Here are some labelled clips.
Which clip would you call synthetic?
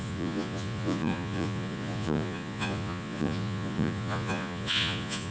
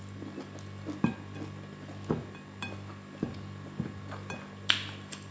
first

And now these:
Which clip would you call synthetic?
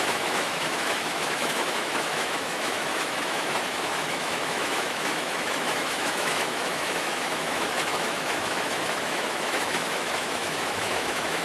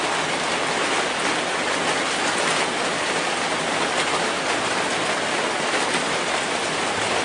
first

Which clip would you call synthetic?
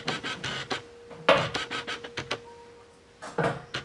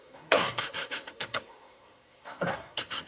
second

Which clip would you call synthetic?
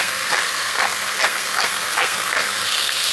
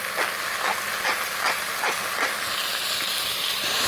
first